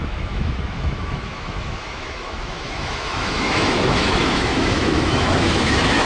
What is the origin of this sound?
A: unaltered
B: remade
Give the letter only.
B